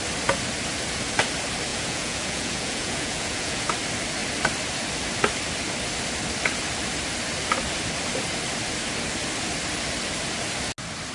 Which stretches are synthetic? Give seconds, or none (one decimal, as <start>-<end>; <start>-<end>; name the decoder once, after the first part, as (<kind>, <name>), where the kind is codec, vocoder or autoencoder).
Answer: 1.7-3.6 (vocoder, Vocos)